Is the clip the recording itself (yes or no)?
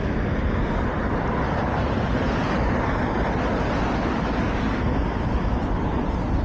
yes